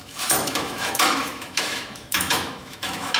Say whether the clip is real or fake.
fake